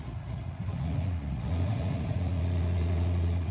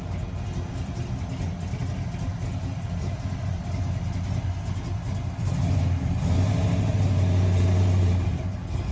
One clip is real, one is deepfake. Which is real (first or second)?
second